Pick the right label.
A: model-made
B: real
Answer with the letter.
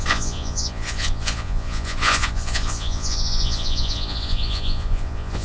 A